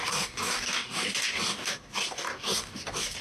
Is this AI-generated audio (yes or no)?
yes